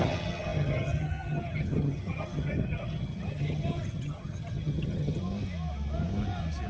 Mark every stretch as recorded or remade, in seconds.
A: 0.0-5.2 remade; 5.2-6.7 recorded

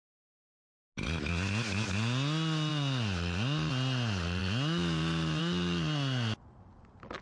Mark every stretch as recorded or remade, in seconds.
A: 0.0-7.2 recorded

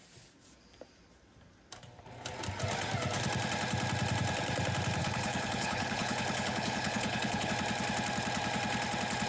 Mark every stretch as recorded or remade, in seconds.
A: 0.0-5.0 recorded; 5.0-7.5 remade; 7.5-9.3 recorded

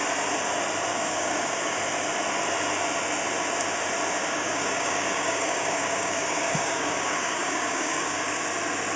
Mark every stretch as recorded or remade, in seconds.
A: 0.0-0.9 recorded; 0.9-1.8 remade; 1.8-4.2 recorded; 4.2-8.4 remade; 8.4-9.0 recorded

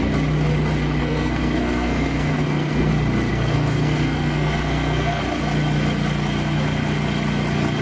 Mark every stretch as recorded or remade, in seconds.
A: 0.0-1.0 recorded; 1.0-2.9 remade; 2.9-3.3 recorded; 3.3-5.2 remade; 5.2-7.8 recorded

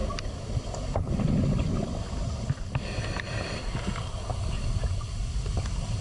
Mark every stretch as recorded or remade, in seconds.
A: 0.0-6.0 recorded